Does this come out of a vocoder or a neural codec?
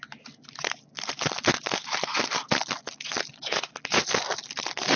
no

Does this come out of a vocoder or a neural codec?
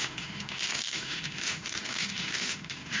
yes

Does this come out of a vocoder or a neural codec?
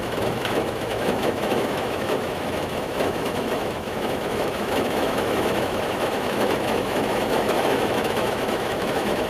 yes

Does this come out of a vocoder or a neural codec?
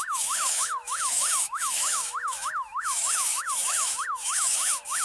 yes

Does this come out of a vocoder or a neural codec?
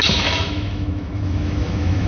yes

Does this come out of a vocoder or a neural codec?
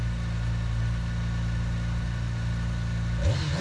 no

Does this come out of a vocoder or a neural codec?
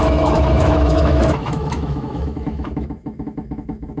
yes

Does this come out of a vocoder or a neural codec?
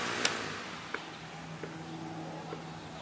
no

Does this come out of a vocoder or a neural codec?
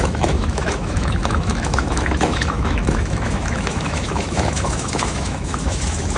yes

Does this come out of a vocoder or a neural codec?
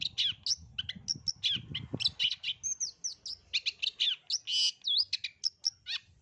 no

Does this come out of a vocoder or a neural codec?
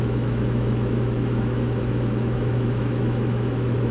yes